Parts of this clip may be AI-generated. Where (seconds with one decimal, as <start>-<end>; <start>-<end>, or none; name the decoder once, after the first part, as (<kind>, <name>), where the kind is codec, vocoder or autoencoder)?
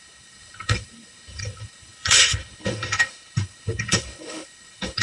0.0-5.0 (codec, HILCodec)